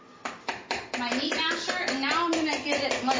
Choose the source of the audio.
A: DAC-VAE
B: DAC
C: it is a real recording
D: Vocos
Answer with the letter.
C